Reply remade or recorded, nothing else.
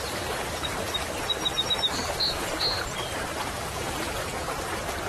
remade